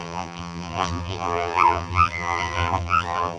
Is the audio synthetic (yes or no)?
yes